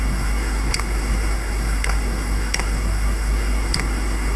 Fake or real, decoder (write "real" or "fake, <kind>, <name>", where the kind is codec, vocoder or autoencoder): fake, codec, SNAC